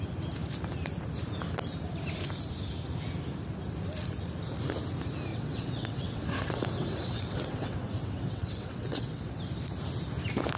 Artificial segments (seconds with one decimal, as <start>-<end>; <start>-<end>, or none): 5.3-9.5